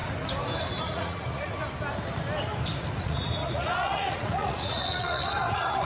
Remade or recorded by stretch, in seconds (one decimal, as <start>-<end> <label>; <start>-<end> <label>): 0.0-0.8 recorded; 0.8-1.5 remade; 1.5-3.0 recorded; 3.0-5.8 remade